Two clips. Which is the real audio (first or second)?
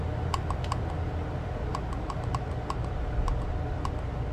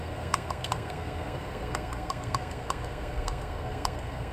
first